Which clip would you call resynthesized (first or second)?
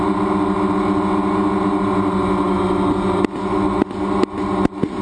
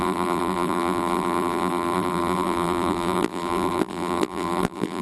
second